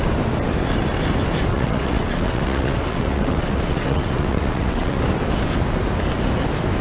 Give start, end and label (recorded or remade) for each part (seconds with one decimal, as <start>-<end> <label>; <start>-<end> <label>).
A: 0.0-1.5 recorded; 1.5-5.0 remade; 5.0-6.8 recorded